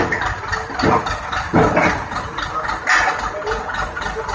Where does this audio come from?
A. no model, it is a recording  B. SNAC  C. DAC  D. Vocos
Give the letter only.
A